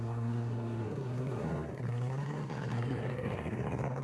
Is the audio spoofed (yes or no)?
yes